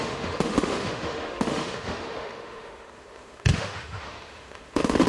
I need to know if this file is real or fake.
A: fake